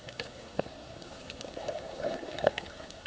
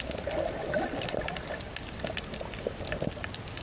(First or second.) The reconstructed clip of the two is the first